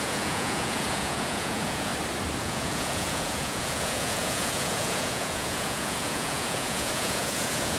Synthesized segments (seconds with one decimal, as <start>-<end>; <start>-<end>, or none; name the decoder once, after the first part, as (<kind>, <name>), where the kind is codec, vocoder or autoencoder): 0.0-1.9 (vocoder, Vocos); 2.4-7.8